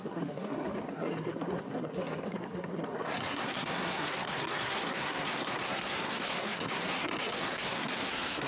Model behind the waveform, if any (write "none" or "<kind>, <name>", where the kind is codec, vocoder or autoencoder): codec, SNAC